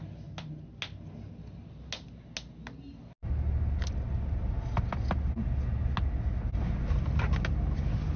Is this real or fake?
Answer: real